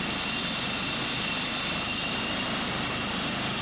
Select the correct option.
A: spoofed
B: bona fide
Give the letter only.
B